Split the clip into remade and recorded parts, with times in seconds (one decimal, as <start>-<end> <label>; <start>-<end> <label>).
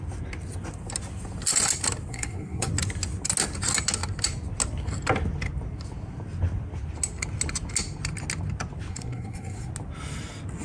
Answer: 0.0-2.1 recorded; 2.1-2.7 remade; 2.7-8.9 recorded; 8.9-9.7 remade; 9.7-10.6 recorded